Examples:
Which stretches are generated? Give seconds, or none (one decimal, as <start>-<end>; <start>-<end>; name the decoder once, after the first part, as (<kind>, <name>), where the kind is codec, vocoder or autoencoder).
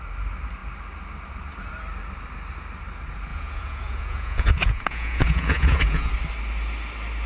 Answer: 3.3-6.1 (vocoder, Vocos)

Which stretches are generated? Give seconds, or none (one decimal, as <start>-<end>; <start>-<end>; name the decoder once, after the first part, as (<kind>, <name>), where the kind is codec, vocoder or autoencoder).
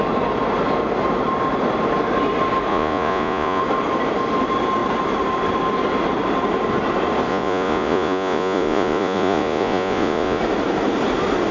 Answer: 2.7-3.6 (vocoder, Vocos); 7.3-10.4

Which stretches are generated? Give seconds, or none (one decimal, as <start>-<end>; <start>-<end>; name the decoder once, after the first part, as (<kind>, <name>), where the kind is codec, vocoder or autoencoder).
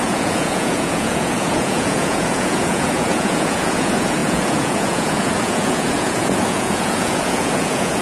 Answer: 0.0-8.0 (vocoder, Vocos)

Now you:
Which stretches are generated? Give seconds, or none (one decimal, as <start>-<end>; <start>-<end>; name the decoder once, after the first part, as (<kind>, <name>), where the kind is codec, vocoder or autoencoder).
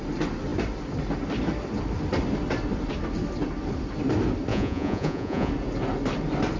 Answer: 4.5-5.5 (vocoder, Vocos)